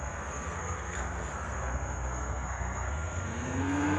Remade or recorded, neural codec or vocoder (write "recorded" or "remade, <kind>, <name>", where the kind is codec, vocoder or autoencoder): remade, codec, SNAC